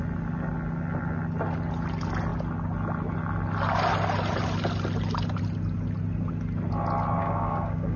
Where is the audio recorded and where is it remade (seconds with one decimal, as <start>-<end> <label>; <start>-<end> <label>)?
0.0-7.2 recorded; 7.2-8.0 remade